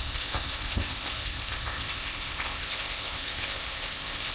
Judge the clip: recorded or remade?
remade